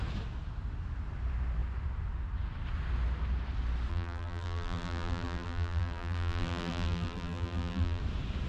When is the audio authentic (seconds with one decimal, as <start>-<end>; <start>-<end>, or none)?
0.0-3.9; 8.0-8.5